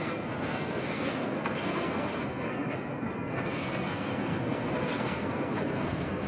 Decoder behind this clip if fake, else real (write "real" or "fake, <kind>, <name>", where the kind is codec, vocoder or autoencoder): fake, codec, SNAC